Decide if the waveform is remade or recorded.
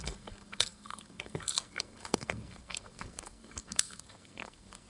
remade